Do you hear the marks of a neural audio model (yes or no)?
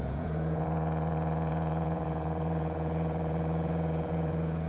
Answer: yes